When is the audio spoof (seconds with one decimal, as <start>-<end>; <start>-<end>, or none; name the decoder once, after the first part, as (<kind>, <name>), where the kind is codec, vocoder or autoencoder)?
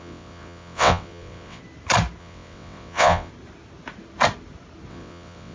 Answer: 0.0-1.6 (vocoder, WaveNeXt); 2.2-3.3; 4.9-5.5